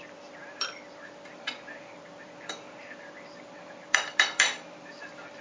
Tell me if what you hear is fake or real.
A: fake